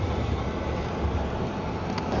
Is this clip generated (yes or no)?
no